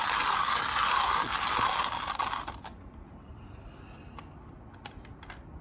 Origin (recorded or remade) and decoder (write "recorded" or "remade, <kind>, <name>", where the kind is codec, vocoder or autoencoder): recorded